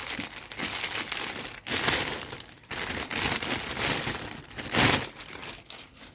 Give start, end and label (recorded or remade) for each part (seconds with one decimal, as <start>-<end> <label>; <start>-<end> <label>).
0.0-6.1 recorded